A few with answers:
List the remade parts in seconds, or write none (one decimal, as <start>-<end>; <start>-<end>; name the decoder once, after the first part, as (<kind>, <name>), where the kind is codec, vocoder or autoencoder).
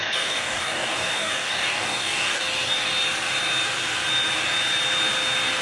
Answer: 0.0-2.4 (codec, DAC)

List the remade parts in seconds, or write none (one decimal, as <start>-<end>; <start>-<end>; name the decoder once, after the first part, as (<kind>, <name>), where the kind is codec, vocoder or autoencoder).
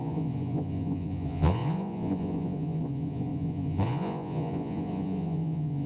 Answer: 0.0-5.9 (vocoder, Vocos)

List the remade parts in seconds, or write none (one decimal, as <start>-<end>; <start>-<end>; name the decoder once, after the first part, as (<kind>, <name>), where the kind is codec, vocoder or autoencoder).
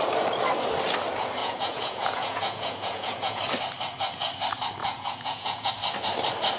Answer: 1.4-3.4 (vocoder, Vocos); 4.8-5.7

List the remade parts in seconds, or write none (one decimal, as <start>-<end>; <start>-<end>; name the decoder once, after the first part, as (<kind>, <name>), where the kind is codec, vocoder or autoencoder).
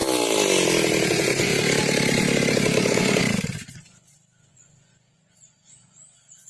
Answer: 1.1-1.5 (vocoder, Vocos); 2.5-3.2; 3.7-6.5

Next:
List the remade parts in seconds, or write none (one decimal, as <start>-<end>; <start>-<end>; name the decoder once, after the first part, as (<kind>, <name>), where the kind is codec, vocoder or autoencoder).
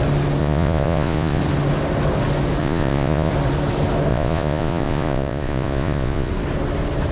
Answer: 0.4-1.4 (vocoder, Vocos); 2.6-3.3; 4.1-6.3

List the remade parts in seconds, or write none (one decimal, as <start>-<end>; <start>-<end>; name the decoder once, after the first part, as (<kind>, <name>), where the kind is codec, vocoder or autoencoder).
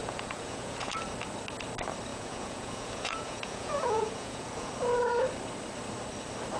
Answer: 0.0-1.0 (vocoder, Vocos); 2.1-4.7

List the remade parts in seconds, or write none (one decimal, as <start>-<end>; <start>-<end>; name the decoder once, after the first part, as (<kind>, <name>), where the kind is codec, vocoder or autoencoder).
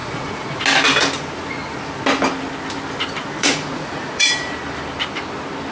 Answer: 0.0-0.6 (vocoder, Vocos); 3.4-4.6